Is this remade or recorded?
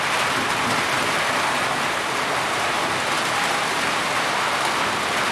recorded